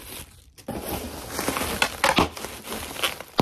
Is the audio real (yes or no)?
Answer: yes